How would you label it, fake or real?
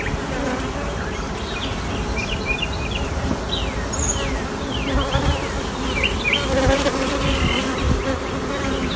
real